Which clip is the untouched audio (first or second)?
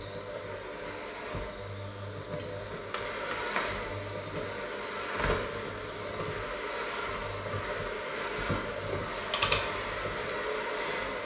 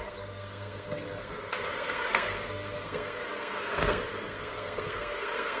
first